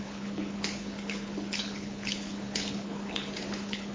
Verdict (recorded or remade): remade